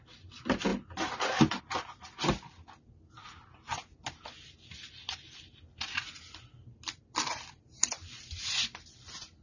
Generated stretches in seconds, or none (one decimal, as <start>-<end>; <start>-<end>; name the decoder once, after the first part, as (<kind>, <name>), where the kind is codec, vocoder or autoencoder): none